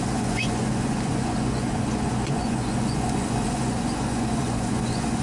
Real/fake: fake